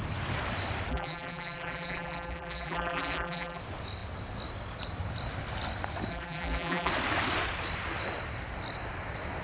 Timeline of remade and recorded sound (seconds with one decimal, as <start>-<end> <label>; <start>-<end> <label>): 0.0-0.9 recorded; 0.9-3.6 remade; 3.6-6.1 recorded; 6.1-6.9 remade; 6.9-9.4 recorded